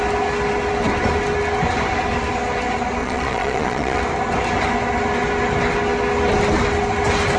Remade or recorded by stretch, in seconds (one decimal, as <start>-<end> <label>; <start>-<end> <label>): 0.0-3.0 recorded; 3.0-4.0 remade; 4.0-7.4 recorded